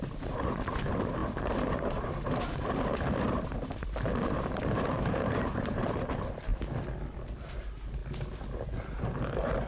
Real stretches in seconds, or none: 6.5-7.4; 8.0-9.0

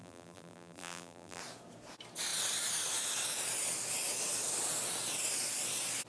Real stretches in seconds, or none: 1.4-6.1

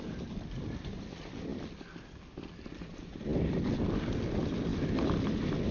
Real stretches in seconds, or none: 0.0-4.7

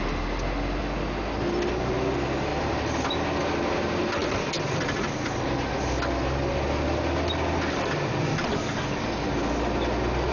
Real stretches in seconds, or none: 0.0-2.5; 3.1-4.2; 6.5-10.3

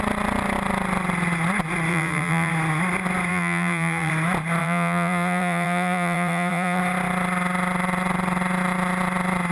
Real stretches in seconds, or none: 0.0-1.9; 2.5-3.3; 4.1-4.6; 6.8-9.5